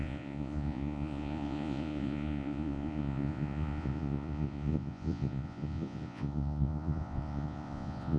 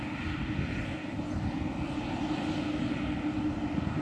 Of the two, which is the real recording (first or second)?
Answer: second